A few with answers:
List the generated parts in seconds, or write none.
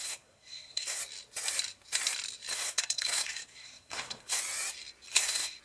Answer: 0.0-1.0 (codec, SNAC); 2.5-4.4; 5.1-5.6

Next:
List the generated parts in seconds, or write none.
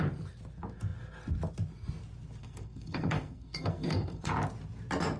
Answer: 2.4-4.3 (codec, SNAC)